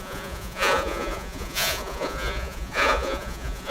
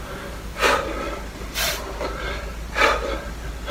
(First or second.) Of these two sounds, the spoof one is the first